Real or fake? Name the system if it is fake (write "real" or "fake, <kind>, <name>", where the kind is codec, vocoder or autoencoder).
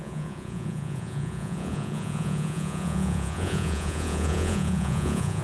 fake, vocoder, Vocos